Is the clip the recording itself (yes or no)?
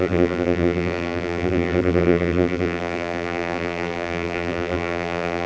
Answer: no